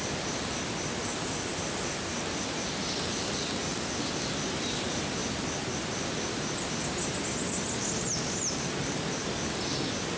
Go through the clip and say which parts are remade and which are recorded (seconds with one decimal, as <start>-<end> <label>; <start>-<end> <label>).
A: 0.0-10.2 recorded